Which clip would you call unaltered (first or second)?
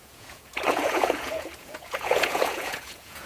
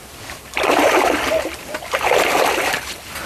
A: second